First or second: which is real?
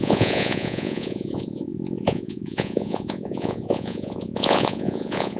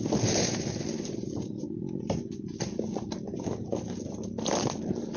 second